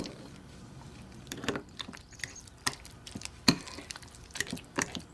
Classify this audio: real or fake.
fake